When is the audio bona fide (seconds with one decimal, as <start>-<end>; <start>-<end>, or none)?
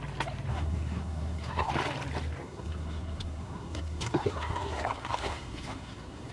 0.0-0.5; 1.7-2.4